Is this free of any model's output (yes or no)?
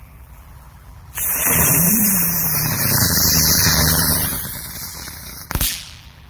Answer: no